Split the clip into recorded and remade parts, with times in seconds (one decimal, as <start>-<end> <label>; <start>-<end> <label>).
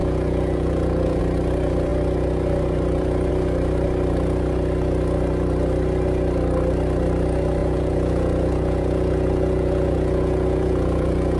0.0-1.2 remade; 1.2-7.6 recorded; 7.6-11.4 remade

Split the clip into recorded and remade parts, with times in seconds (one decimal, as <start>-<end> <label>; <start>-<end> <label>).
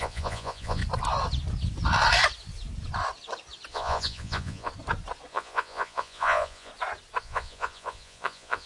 0.0-0.8 remade; 0.8-3.7 recorded; 3.7-4.7 remade; 4.7-5.3 recorded; 5.3-6.7 remade; 6.7-7.2 recorded; 7.2-8.7 remade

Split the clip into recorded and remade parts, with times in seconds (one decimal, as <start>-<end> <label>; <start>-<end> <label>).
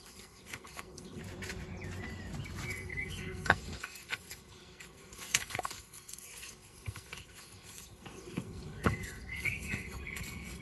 0.0-1.2 remade; 1.2-2.7 recorded; 2.7-10.6 remade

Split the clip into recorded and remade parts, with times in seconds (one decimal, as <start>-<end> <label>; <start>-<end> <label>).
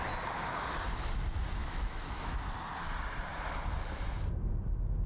0.0-1.6 recorded; 1.6-2.4 remade; 2.4-5.1 recorded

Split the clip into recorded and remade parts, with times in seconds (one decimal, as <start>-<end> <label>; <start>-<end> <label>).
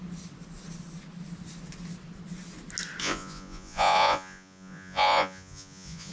0.0-3.0 recorded; 3.0-6.1 remade